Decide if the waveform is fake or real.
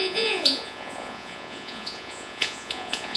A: fake